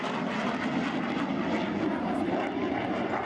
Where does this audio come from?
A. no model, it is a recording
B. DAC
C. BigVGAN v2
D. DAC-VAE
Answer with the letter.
A